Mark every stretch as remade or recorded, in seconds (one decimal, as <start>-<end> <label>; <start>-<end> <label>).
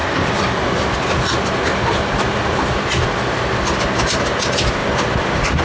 0.0-5.6 recorded